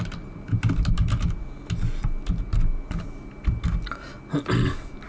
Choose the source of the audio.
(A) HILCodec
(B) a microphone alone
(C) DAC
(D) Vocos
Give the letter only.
B